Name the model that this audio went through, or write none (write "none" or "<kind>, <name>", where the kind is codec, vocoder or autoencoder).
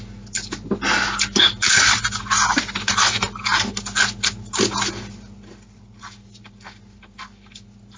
none